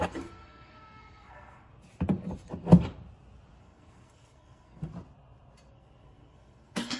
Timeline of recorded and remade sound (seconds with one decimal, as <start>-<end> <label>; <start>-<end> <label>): 0.0-1.7 remade; 1.7-3.6 recorded; 3.6-4.9 remade; 4.9-5.7 recorded; 5.7-7.0 remade